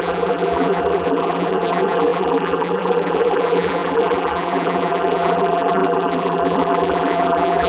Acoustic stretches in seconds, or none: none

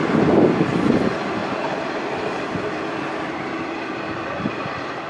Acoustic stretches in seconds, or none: 0.0-1.4; 4.5-5.1

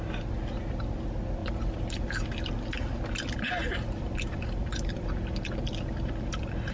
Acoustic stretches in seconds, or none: 0.0-1.4; 2.5-3.6

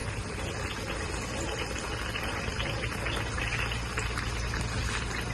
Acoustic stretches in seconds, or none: 0.0-5.3

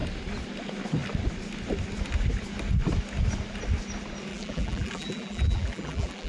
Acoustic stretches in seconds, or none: 0.0-4.3

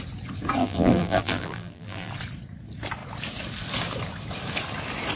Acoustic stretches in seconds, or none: 0.0-0.6; 2.1-5.2